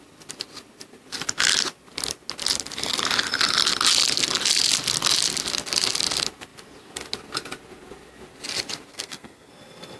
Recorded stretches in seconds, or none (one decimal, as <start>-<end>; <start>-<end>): 0.0-8.9; 9.5-10.0